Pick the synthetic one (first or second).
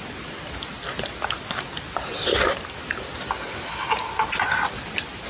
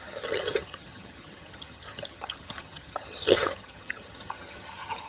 second